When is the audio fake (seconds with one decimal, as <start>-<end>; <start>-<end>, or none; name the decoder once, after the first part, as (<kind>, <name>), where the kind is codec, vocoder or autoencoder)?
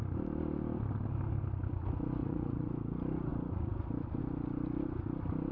2.2-2.7 (vocoder, Vocos)